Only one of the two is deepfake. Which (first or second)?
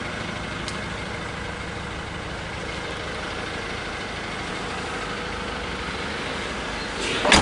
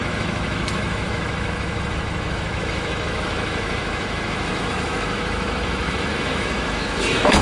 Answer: second